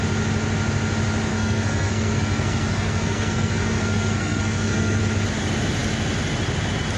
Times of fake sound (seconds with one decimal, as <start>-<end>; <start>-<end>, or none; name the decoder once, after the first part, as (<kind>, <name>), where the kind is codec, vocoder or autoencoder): 1.3-5.0 (codec, SNAC)